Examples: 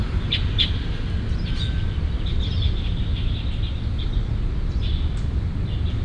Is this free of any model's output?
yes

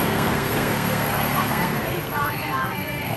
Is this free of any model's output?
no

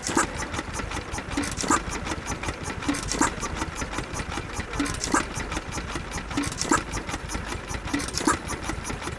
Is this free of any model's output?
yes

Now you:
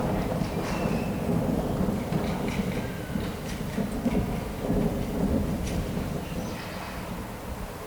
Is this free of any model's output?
yes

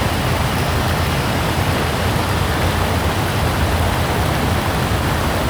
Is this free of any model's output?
yes